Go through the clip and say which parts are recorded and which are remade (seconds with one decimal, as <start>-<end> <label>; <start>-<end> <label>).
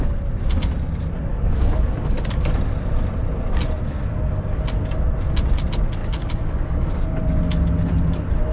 0.0-1.3 recorded; 1.3-2.5 remade; 2.5-6.0 recorded; 6.0-6.9 remade; 6.9-8.5 recorded